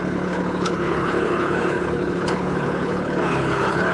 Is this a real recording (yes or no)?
no